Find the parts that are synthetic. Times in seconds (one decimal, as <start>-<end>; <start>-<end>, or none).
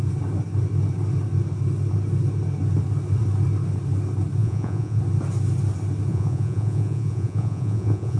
4.4-5.0; 6.1-8.2